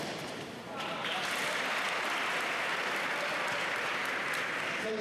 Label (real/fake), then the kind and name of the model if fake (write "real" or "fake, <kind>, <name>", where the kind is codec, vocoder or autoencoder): real